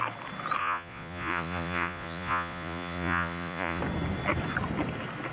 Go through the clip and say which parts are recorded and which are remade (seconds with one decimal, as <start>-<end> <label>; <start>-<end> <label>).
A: 0.0-0.6 recorded; 0.6-3.8 remade; 3.8-5.3 recorded